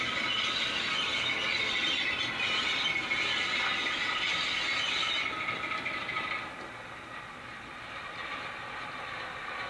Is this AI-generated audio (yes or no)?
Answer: no